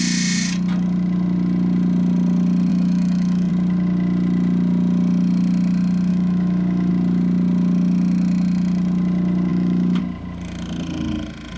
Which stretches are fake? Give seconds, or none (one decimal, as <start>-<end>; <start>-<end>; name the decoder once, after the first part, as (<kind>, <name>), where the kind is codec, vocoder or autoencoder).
2.7-3.5 (autoencoder, DAC-VAE); 6.1-6.9; 9.5-10.0